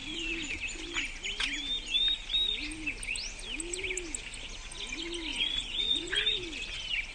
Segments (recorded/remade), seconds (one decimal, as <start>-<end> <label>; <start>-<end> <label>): 0.0-5.3 recorded; 5.3-6.2 remade; 6.2-7.1 recorded